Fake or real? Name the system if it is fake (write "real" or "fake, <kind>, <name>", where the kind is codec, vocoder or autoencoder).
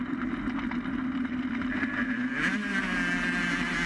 real